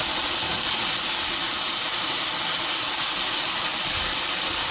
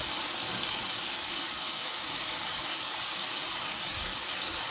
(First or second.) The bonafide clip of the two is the first